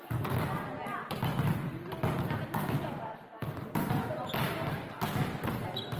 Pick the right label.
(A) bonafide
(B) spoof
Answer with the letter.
A